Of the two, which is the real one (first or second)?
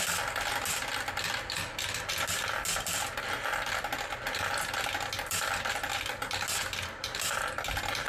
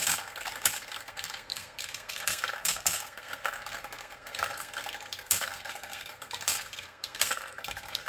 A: first